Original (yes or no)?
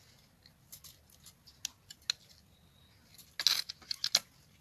yes